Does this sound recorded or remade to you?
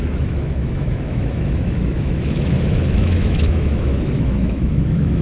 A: remade